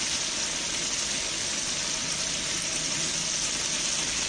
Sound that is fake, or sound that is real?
real